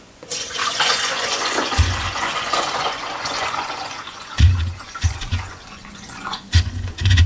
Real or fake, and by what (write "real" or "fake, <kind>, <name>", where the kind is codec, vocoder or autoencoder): fake, vocoder, Vocos